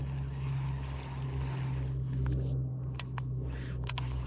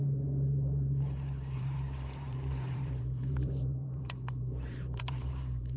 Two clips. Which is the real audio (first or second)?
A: first